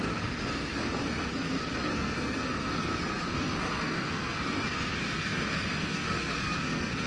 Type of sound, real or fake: fake